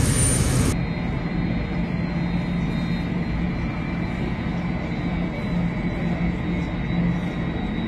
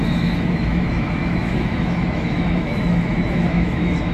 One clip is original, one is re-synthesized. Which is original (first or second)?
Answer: first